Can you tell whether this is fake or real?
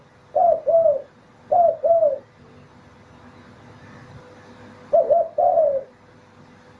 real